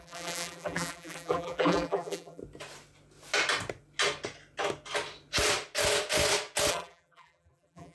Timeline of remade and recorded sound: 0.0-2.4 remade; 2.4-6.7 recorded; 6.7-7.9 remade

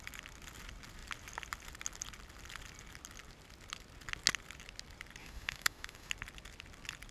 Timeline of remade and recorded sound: 0.0-5.2 recorded; 5.2-6.1 remade; 6.1-7.1 recorded

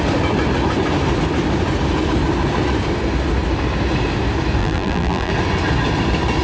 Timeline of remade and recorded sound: 0.0-4.6 recorded; 4.6-5.3 remade; 5.3-6.4 recorded

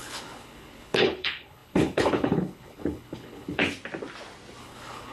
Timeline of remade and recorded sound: 0.0-3.6 remade; 3.6-4.6 recorded; 4.6-5.1 remade